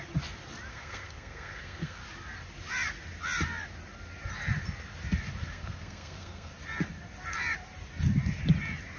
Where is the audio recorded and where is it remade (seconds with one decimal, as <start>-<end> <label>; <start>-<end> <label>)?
0.0-0.7 recorded; 0.7-2.0 remade; 2.0-5.4 recorded; 5.4-6.5 remade; 6.5-9.0 recorded